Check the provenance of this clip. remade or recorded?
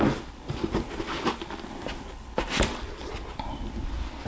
recorded